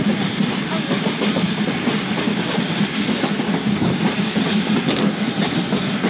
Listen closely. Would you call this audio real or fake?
real